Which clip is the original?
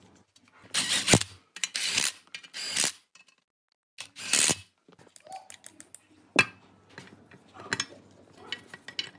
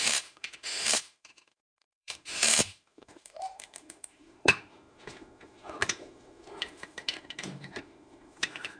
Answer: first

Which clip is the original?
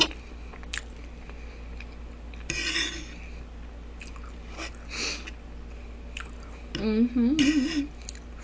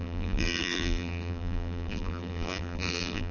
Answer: first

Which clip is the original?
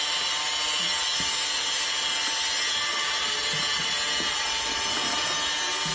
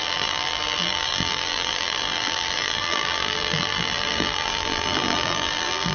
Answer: first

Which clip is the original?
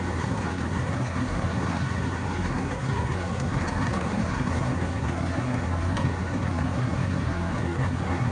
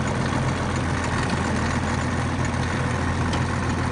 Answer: second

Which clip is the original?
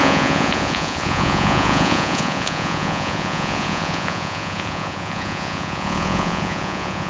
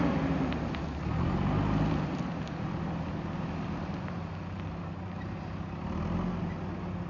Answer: second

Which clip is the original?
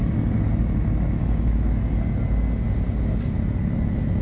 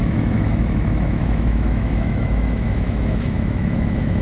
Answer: first